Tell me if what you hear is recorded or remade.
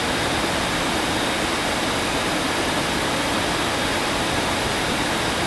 recorded